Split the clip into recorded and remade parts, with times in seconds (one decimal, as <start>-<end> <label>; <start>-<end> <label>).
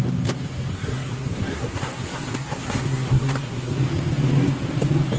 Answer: 0.0-0.7 recorded; 0.7-3.8 remade; 3.8-5.2 recorded